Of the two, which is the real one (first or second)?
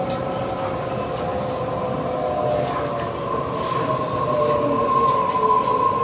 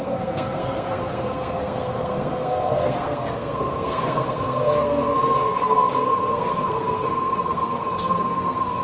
first